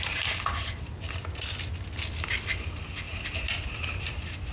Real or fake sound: real